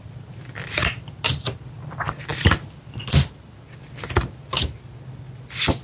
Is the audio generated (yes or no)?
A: no